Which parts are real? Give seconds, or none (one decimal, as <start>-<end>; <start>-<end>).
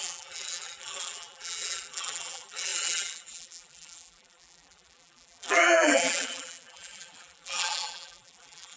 none